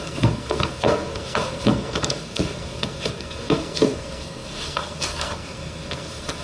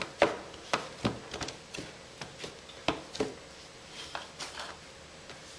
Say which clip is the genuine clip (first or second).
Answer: second